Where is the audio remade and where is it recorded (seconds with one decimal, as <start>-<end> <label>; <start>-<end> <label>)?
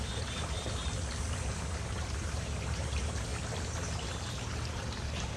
0.0-0.8 remade; 0.8-1.4 recorded; 1.4-3.3 remade; 3.3-4.2 recorded; 4.2-5.4 remade